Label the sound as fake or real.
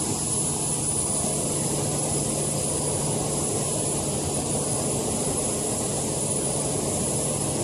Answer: fake